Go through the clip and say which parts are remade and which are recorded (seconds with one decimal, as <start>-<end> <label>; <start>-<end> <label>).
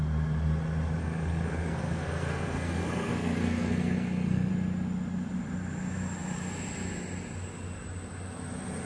0.0-1.0 recorded; 1.0-4.5 remade; 4.5-8.9 recorded